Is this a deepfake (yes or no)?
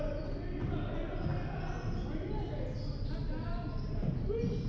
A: no